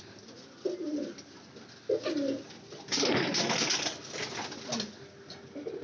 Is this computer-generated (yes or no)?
no